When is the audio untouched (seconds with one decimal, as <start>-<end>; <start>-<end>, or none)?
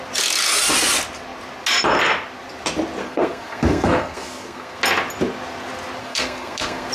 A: 0.0-3.0; 4.8-6.0